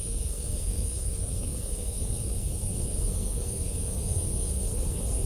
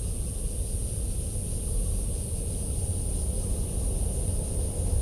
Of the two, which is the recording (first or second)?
second